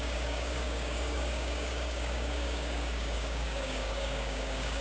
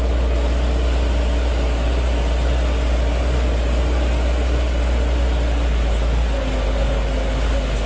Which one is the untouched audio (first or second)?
second